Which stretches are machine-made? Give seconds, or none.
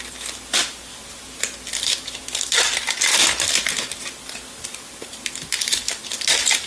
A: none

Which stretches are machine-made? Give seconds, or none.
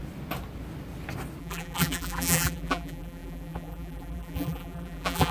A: 1.4-5.3 (vocoder, BigVGAN v2)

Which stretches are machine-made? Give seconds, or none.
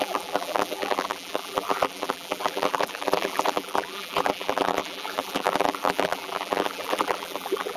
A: 0.0-7.8 (vocoder, BigVGAN v2)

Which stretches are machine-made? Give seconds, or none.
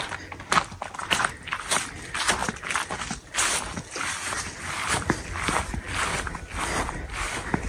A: 1.0-1.9 (vocoder, BigVGAN v2)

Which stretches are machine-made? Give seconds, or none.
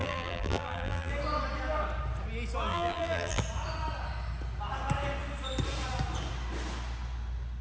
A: 0.0-1.1 (vocoder, BigVGAN v2); 2.7-3.4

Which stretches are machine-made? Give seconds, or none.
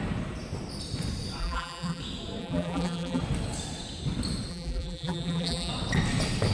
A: 1.4-2.0 (vocoder, BigVGAN v2); 2.4-3.2; 4.5-5.7